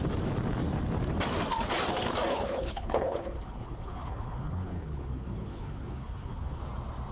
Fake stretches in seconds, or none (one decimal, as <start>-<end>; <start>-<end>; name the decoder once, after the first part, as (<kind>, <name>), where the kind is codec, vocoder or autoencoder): 2.3-6.6 (codec, HILCodec)